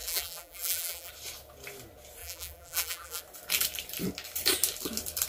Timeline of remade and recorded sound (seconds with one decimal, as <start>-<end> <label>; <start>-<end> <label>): 0.0-1.1 remade; 1.1-2.2 recorded; 2.2-3.2 remade; 3.2-5.3 recorded